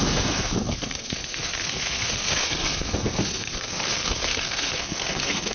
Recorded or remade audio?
remade